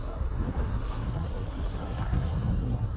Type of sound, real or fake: fake